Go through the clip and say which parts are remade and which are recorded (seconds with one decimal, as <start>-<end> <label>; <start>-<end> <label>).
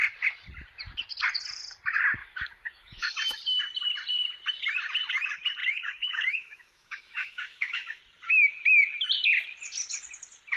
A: 0.0-2.2 recorded; 2.2-3.1 remade; 3.1-5.6 recorded; 5.6-8.0 remade; 8.0-10.6 recorded